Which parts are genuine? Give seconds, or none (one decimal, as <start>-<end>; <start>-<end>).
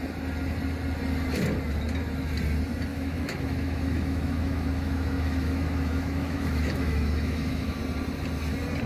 0.0-2.9; 7.8-8.9